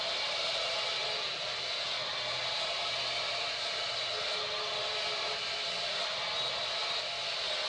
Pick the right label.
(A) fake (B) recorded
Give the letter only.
B